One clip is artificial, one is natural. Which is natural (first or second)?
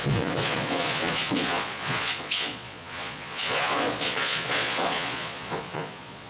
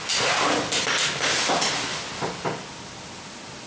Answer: second